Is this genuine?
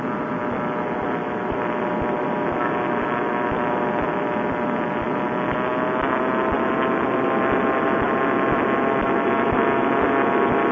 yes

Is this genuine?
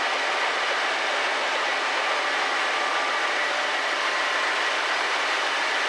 yes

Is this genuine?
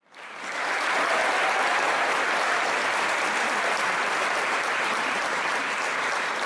no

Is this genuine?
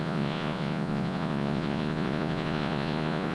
no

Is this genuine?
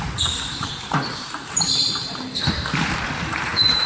no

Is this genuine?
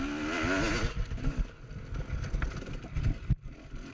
yes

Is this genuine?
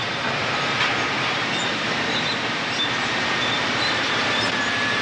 no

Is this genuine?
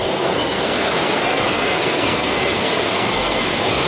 no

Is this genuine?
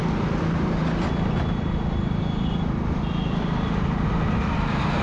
yes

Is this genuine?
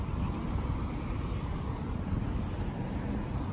yes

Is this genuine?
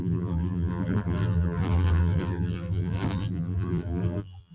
no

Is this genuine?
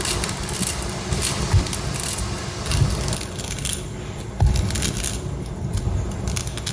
yes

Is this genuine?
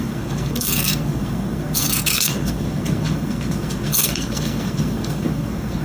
no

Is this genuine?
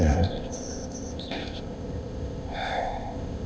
no